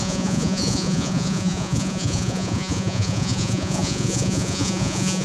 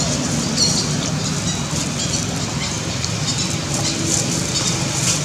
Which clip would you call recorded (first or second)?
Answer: second